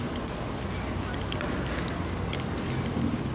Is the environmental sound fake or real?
real